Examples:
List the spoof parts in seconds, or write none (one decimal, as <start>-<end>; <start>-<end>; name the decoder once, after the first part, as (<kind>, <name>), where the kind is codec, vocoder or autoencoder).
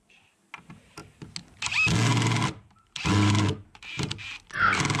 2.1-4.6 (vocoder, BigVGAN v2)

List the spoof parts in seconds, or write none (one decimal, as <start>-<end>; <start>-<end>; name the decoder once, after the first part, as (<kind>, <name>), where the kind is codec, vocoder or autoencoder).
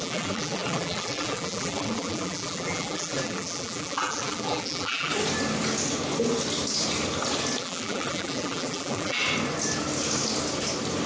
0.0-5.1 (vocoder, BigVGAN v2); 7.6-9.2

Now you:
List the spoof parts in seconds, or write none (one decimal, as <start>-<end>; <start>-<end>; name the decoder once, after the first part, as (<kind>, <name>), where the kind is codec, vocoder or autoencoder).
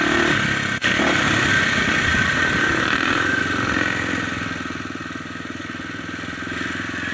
0.8-1.5 (vocoder, BigVGAN v2); 2.1-3.4; 5.0-5.6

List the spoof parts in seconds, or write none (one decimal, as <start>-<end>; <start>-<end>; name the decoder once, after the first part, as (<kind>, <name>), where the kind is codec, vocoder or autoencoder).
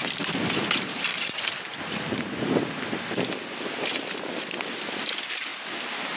none